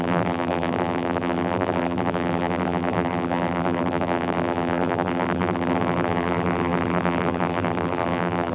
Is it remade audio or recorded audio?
remade